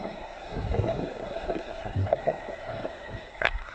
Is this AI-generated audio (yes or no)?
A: yes